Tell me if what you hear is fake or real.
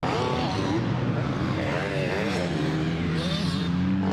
real